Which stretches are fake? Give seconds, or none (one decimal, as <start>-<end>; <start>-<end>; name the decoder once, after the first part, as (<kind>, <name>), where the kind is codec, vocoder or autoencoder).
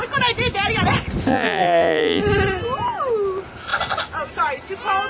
1.3-2.2 (vocoder, Vocos)